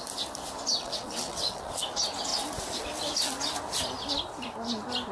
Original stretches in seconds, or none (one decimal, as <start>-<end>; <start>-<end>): 0.0-0.7; 1.7-5.1